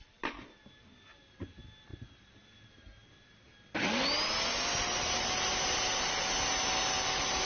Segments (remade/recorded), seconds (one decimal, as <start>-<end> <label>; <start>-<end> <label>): 0.0-7.5 recorded